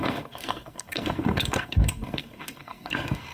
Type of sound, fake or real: fake